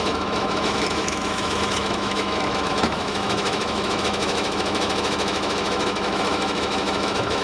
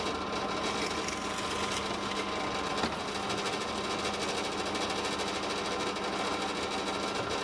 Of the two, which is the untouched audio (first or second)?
second